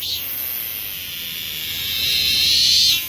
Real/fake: real